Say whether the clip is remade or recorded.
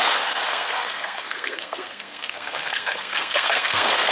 remade